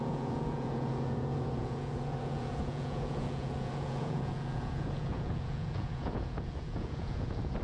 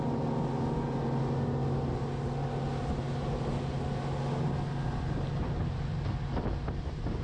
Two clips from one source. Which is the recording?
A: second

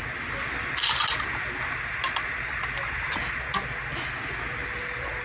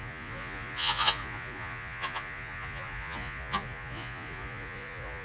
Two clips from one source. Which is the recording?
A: first